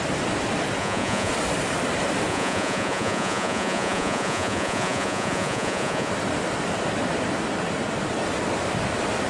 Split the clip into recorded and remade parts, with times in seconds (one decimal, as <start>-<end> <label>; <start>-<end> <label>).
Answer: 0.0-0.8 recorded; 0.8-1.3 remade; 1.3-2.3 recorded; 2.3-6.1 remade; 6.1-9.3 recorded